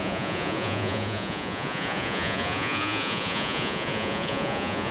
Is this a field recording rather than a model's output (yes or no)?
no